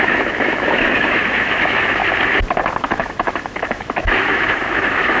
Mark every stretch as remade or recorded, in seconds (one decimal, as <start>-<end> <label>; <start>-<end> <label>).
0.0-2.0 remade; 2.0-2.8 recorded; 2.8-5.2 remade